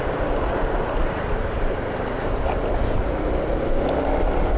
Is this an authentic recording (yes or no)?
yes